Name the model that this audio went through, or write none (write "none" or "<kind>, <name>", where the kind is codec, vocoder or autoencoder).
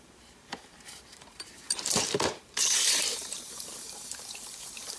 vocoder, BigVGAN v2